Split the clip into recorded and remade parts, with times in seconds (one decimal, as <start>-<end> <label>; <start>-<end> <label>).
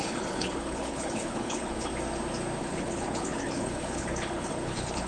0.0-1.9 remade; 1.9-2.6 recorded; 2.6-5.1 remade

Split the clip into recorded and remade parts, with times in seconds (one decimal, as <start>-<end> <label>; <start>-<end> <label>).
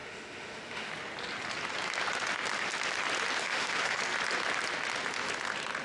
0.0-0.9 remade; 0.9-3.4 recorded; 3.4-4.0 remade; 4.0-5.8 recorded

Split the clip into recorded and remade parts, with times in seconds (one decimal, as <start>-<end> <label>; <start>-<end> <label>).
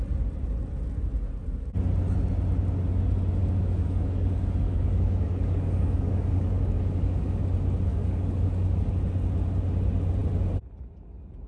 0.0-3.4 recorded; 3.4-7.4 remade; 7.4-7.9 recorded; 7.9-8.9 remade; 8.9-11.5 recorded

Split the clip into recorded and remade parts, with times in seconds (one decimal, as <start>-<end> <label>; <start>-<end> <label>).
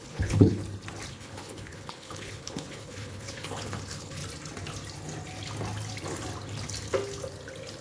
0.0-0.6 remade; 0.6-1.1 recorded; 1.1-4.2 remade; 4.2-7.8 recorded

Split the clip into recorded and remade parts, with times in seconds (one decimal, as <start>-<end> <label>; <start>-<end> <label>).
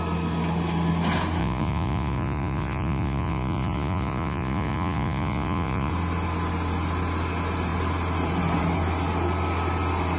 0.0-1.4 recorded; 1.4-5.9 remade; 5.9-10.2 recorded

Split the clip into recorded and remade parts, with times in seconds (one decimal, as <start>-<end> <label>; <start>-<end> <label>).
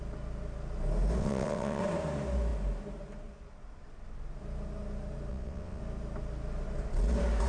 0.0-1.2 recorded; 1.2-1.8 remade; 1.8-5.3 recorded; 5.3-5.8 remade; 5.8-7.5 recorded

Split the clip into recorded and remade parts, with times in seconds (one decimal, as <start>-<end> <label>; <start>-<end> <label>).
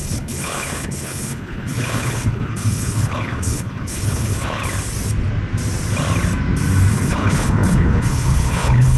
0.0-4.6 remade; 4.6-6.9 recorded; 6.9-9.0 remade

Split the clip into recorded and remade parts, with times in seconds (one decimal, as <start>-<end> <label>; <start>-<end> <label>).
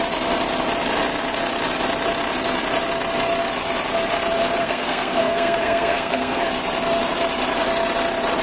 0.0-4.6 recorded; 4.6-6.5 remade; 6.5-8.4 recorded